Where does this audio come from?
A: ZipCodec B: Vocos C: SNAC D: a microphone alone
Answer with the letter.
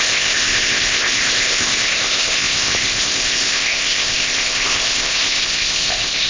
A